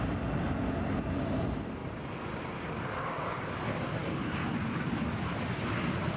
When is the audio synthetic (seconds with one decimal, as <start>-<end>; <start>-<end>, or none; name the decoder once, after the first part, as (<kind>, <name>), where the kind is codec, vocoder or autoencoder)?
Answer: none